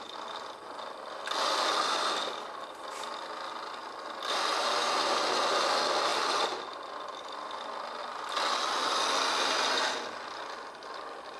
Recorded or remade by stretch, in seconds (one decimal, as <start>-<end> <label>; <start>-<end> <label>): 0.0-11.4 recorded